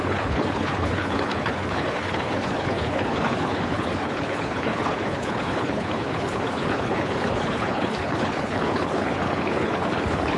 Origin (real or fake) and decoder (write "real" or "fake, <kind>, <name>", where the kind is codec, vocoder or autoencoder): fake, codec, HILCodec